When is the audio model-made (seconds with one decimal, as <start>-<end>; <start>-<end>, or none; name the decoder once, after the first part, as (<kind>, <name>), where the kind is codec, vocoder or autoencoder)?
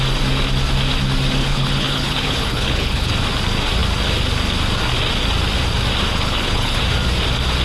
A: 1.4-3.1 (codec, HILCodec); 6.1-6.8